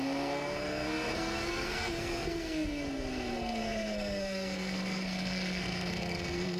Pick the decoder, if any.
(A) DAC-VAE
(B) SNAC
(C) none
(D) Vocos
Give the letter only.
B